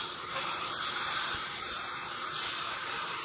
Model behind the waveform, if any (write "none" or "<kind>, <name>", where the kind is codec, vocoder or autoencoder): vocoder, BigVGAN v2